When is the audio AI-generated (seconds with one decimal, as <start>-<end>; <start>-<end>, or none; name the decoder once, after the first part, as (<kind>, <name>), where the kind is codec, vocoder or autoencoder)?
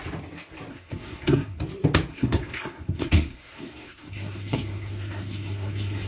0.7-1.6 (codec, SNAC); 2.1-6.1